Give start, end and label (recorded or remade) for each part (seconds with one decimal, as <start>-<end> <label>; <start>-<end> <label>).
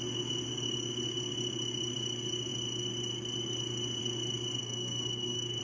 0.0-4.6 recorded; 4.6-5.6 remade